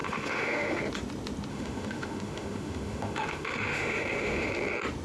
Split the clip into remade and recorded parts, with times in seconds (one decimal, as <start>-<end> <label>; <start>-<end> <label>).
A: 0.0-0.8 remade; 0.8-1.5 recorded; 1.5-4.5 remade; 4.5-5.0 recorded